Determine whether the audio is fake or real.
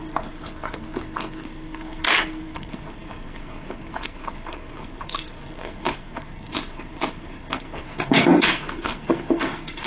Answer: fake